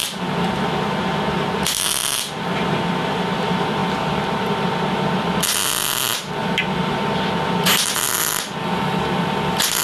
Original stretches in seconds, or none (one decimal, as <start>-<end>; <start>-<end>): 0.0-9.8

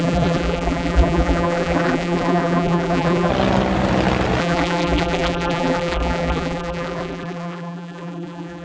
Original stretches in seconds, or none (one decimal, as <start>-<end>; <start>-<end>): 3.3-4.4

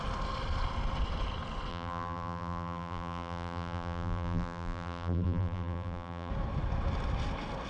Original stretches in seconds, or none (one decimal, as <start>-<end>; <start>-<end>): 0.0-1.7; 6.3-7.7

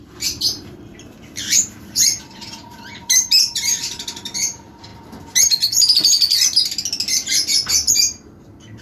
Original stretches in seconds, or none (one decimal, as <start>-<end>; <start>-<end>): 4.9-7.9

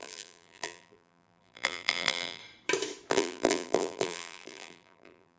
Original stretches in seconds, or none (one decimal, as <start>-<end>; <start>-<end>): 2.4-3.1

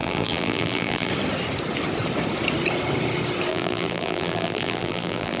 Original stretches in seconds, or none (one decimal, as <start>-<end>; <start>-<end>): 1.1-3.5

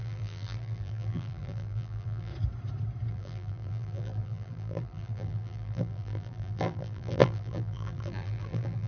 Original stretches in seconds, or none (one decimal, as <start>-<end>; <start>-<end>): 2.3-3.1